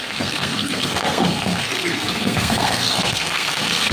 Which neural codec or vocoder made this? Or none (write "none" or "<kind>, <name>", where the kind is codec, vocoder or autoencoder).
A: codec, SNAC